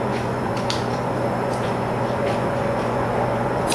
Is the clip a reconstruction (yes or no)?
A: yes